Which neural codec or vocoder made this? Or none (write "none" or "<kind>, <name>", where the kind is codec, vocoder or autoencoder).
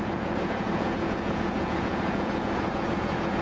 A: vocoder, Vocos